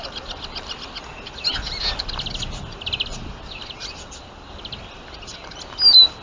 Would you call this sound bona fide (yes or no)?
yes